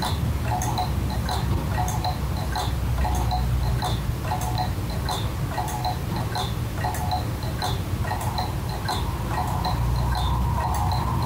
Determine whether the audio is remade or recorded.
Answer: recorded